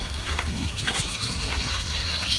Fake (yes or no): yes